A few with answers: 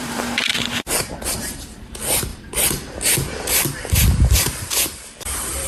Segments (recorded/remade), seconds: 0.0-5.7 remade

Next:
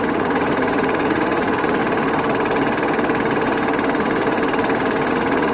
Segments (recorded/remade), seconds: 0.0-1.8 remade; 1.8-5.1 recorded; 5.1-5.5 remade